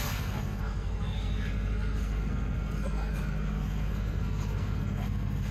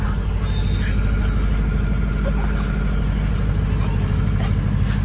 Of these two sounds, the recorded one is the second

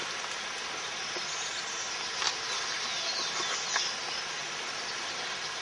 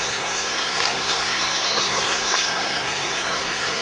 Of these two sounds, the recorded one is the first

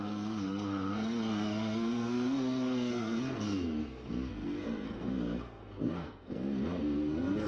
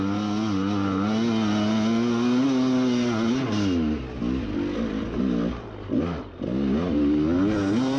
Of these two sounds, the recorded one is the second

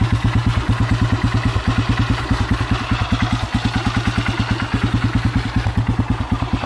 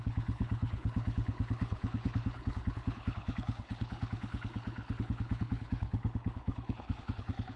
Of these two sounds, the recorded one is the first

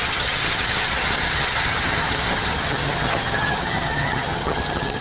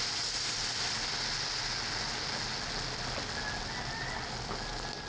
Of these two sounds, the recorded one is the second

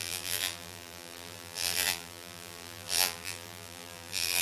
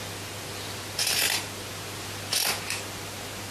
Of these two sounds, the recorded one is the second